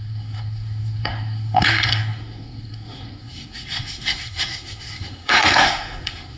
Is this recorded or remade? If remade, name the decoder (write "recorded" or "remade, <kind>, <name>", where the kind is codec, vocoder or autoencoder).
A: remade, codec, SNAC